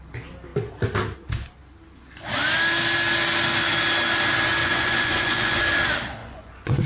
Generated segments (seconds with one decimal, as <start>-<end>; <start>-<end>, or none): 4.6-5.6; 6.2-6.9